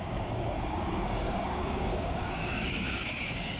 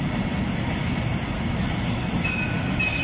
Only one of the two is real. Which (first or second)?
second